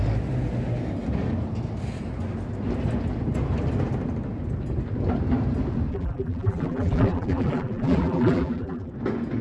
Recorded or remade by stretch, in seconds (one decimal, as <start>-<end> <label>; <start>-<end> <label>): 0.0-5.9 recorded; 5.9-8.9 remade; 8.9-9.4 recorded